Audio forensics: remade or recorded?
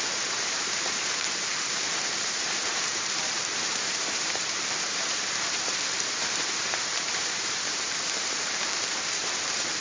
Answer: remade